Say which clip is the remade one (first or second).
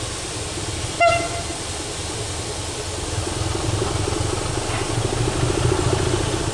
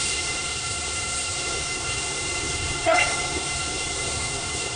second